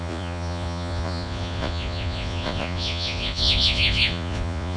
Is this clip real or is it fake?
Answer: fake